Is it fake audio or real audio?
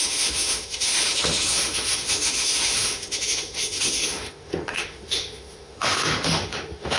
fake